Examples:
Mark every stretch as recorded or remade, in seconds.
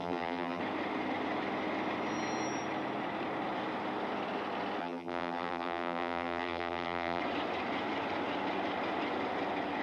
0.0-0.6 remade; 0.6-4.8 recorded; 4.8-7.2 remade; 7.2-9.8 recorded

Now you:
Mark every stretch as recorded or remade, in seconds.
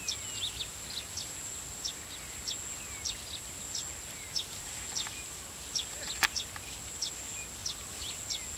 0.0-8.6 recorded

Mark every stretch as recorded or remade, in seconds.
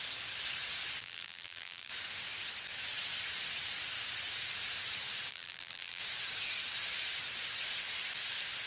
0.0-1.0 recorded; 1.0-1.9 remade; 1.9-5.3 recorded; 5.3-6.0 remade; 6.0-8.7 recorded